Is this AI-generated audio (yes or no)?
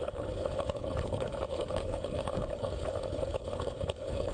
yes